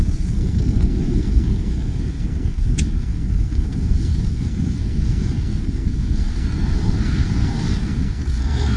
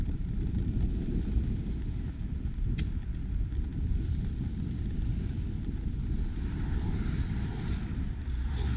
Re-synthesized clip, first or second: first